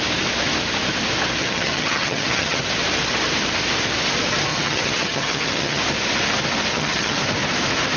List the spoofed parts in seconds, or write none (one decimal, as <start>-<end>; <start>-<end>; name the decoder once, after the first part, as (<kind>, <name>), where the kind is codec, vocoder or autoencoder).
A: 1.4-2.6 (vocoder, HiFi-GAN); 4.5-5.8; 6.7-7.2